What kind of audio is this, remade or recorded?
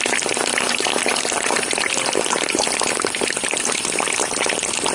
recorded